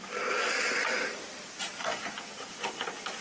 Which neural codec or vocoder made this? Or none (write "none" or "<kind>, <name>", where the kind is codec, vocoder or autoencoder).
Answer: none